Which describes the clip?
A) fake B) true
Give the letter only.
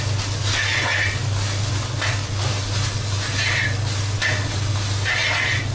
B